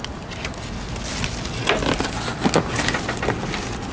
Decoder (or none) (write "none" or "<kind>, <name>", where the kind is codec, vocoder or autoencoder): none